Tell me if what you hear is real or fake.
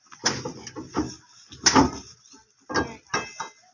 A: real